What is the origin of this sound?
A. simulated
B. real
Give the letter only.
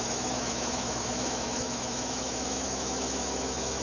A